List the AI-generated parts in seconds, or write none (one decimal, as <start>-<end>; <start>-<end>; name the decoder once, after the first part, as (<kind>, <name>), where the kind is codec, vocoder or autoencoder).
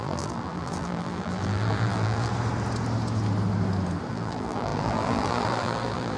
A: 0.0-2.3 (vocoder, BigVGAN v2); 4.1-6.2